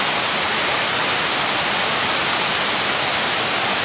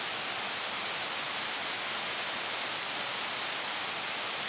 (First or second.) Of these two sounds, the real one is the second